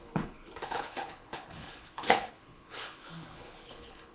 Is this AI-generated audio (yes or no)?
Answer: yes